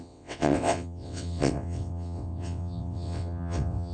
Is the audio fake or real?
fake